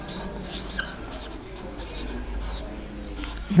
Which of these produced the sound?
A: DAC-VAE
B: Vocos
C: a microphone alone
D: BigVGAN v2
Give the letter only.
C